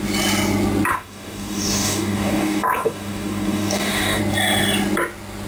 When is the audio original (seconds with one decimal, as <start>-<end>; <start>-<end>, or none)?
0.0-0.9; 4.2-5.5